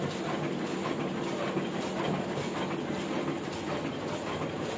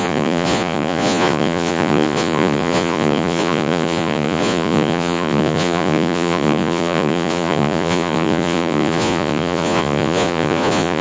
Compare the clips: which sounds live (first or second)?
first